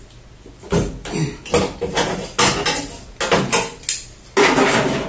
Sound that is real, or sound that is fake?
real